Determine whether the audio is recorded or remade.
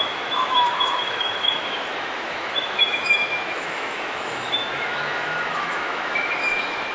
remade